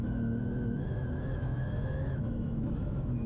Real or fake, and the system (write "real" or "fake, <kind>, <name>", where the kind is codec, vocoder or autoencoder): fake, autoencoder, DAC-VAE